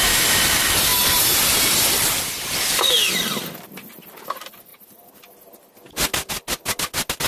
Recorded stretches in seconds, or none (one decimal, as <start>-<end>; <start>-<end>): 0.0-7.3